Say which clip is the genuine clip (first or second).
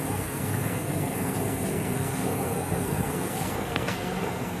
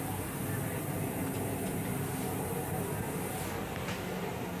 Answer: second